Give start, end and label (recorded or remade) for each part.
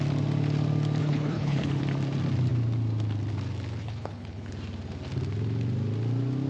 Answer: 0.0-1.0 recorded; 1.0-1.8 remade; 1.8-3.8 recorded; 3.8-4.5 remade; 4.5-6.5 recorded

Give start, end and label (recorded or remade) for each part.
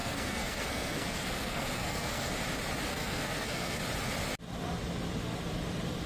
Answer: 0.0-2.3 remade; 2.3-2.9 recorded; 2.9-3.8 remade; 3.8-6.1 recorded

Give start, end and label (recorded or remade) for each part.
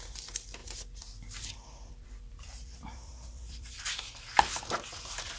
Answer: 0.0-0.6 recorded; 0.6-3.8 remade; 3.8-5.4 recorded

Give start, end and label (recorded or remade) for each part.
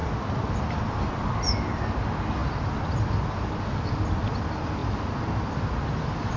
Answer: 0.0-1.0 remade; 1.0-6.4 recorded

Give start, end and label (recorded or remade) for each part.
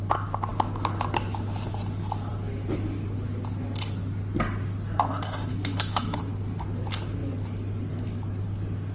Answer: 0.0-5.5 recorded; 5.5-6.2 remade; 6.2-8.9 recorded